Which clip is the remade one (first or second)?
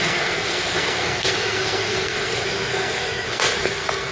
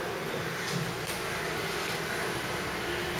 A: first